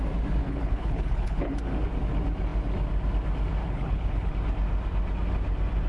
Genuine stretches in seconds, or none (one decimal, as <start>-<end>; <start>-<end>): 0.0-0.4; 1.6-3.6; 4.3-5.9